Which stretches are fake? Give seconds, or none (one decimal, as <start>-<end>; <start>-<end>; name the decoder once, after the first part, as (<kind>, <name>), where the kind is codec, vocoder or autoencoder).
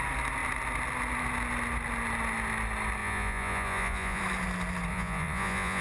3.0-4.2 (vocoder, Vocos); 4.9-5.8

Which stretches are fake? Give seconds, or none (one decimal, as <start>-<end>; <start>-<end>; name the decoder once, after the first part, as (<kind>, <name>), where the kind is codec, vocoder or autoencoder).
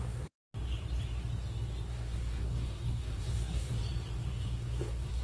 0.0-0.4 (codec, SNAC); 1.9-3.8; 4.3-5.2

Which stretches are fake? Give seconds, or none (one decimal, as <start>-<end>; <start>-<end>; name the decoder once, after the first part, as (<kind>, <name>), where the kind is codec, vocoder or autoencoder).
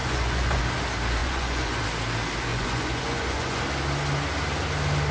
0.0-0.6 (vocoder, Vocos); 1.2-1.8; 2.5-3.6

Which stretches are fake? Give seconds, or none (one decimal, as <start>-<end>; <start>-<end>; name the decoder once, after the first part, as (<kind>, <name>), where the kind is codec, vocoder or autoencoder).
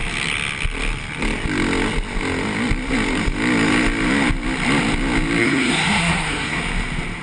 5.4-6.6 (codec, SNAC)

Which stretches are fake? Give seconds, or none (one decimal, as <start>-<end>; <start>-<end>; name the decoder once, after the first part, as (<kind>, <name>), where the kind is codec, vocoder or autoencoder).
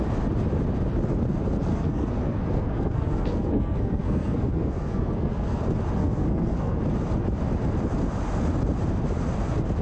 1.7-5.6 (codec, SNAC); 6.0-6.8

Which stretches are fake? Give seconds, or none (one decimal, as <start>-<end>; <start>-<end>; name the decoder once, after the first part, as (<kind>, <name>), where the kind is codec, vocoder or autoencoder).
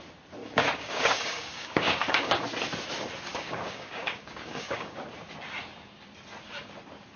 0.4-2.4 (codec, DAC); 3.3-5.0